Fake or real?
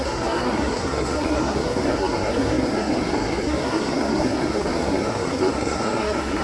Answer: fake